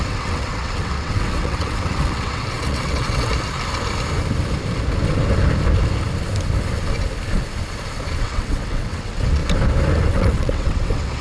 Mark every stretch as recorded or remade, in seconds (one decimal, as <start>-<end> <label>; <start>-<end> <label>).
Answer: 0.0-3.3 remade; 3.3-8.2 recorded; 8.2-9.4 remade; 9.4-10.1 recorded; 10.1-11.2 remade